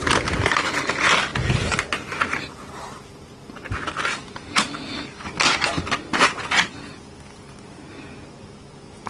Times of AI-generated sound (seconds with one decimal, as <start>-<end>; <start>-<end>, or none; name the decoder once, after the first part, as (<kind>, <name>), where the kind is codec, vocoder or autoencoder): none